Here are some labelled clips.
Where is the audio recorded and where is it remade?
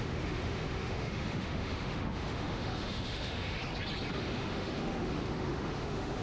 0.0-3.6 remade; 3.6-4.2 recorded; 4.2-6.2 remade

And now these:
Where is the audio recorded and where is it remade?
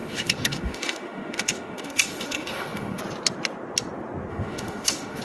0.0-3.0 remade; 3.0-4.3 recorded; 4.3-5.2 remade